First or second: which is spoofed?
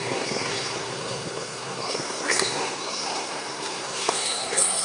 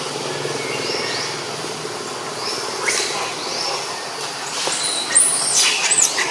first